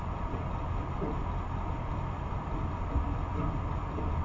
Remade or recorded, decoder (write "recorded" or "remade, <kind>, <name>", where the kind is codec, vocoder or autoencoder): recorded